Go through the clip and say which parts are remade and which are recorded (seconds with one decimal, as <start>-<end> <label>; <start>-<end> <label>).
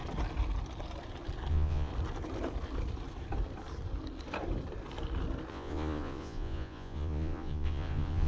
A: 0.0-1.5 recorded; 1.5-1.9 remade; 1.9-5.5 recorded; 5.5-8.3 remade